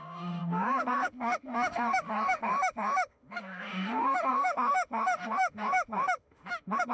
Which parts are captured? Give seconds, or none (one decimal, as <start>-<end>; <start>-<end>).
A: none

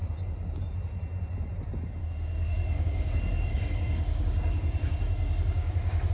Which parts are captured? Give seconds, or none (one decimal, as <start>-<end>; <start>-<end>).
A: 0.0-2.0